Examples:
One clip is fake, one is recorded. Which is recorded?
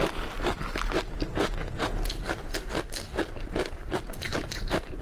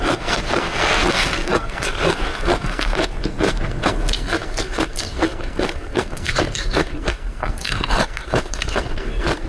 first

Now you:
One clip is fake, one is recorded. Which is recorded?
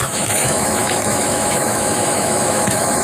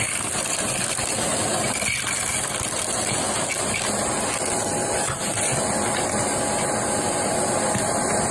second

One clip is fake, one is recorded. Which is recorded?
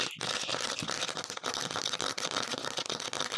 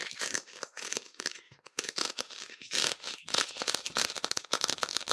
first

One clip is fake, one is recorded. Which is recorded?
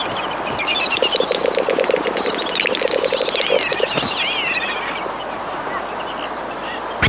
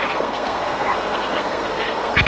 first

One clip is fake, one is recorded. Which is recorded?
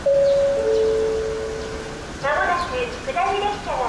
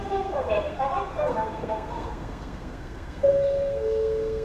first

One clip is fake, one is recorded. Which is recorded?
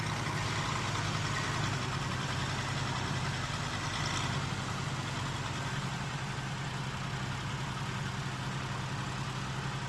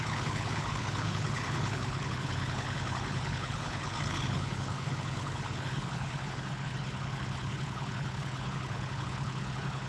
first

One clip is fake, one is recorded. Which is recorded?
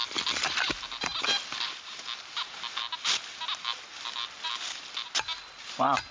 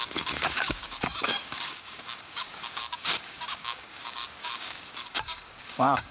first